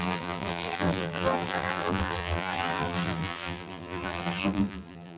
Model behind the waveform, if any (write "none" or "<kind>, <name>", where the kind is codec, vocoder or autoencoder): vocoder, BigVGAN v2